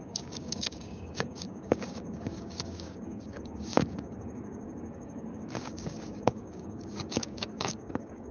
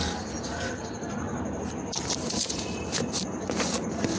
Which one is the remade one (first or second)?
first